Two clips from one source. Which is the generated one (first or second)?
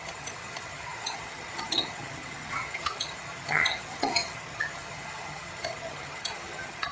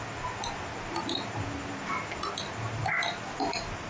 first